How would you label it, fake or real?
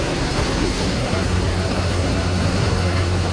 fake